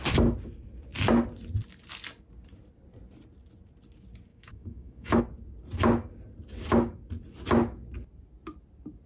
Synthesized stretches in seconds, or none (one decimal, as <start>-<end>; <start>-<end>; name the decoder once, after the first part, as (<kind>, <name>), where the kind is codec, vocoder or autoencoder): 4.3-5.2 (autoencoder, DAC-VAE)